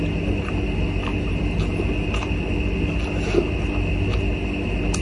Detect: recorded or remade recorded